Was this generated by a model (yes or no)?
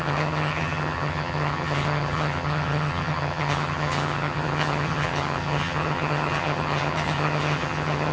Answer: yes